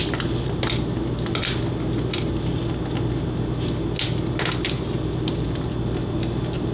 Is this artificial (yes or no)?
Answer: no